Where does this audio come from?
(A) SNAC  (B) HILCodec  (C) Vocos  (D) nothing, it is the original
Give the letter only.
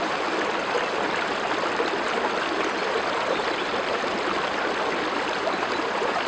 D